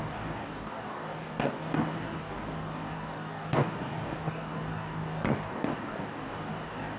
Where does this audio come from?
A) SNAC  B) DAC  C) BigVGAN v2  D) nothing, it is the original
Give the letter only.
B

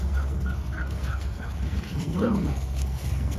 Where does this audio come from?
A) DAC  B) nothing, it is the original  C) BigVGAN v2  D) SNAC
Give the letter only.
D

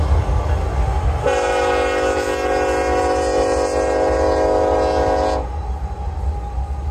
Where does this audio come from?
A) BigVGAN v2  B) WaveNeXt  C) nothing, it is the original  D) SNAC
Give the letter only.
C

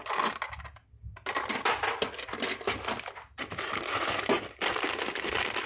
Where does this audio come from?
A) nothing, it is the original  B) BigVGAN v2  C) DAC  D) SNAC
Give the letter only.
A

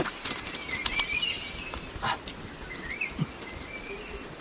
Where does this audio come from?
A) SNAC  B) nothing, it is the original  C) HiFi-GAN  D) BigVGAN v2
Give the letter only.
B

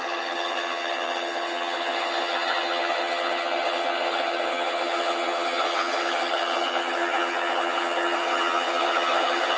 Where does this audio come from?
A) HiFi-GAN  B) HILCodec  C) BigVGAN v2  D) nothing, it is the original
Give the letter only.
A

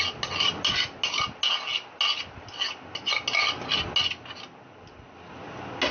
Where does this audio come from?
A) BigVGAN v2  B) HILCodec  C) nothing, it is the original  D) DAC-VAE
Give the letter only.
C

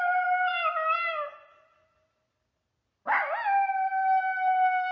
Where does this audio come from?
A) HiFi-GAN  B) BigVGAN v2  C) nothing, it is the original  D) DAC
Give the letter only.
C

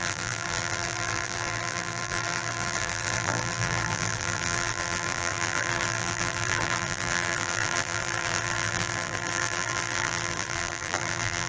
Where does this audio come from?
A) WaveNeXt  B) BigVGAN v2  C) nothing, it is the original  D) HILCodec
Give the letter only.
B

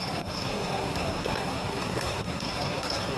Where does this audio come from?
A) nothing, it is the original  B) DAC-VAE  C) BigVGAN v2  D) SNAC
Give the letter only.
D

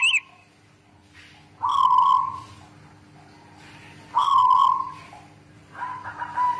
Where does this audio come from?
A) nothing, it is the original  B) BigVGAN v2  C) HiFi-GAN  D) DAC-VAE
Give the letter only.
A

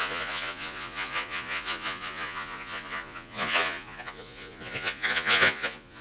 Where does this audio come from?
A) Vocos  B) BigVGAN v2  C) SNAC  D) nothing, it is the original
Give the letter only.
A